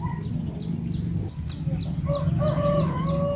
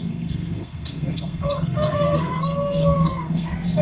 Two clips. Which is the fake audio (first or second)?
second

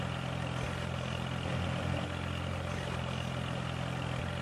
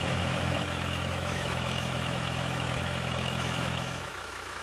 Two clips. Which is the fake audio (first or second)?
second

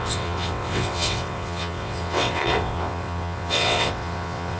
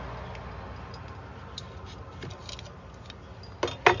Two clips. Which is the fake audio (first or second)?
first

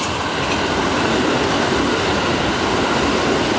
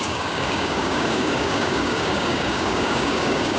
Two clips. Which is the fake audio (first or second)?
second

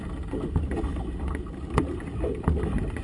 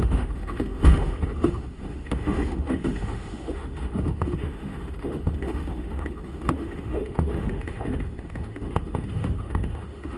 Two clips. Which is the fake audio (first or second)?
second